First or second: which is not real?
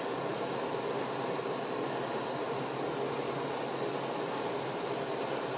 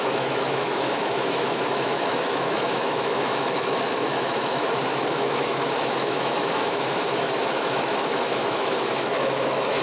second